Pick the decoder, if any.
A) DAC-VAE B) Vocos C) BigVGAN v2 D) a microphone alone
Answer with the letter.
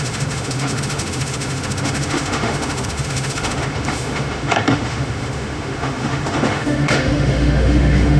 A